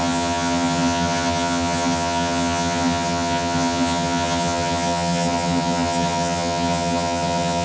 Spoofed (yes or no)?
yes